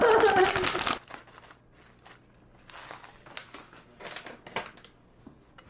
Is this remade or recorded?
recorded